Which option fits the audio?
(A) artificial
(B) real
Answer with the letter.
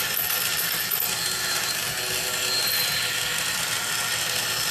B